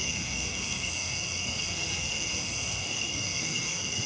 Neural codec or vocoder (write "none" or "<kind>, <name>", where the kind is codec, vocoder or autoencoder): codec, SNAC